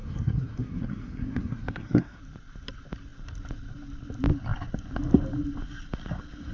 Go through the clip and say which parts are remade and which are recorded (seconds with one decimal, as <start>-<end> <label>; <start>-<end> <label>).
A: 0.0-2.2 remade; 2.2-6.5 recorded